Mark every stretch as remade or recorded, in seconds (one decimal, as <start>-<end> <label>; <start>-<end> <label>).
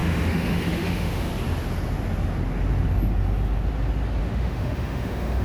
0.0-1.3 remade; 1.3-4.2 recorded; 4.2-5.4 remade